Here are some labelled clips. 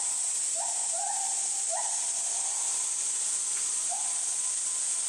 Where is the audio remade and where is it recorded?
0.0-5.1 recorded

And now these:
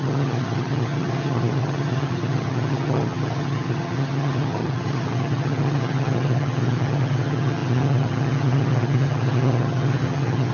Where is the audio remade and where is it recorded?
0.0-10.5 remade